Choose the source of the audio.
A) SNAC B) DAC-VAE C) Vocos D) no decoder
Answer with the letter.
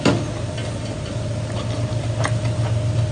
D